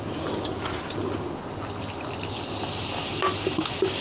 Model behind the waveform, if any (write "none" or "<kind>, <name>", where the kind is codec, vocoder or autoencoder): none